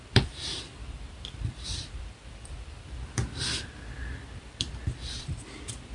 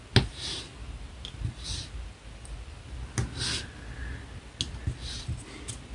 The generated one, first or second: first